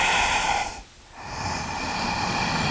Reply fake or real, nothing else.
real